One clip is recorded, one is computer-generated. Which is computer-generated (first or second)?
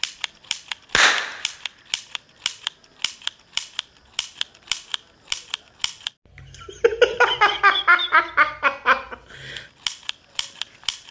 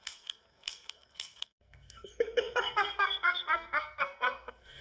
second